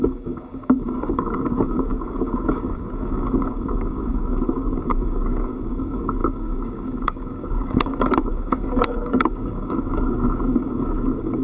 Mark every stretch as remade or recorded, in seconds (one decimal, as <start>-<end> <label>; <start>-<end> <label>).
0.0-11.4 remade